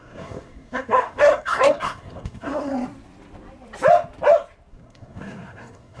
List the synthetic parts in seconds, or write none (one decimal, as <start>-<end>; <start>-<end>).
0.0-2.7; 4.7-6.0